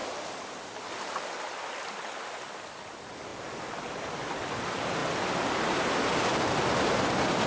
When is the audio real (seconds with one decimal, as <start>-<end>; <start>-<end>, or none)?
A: 0.0-7.5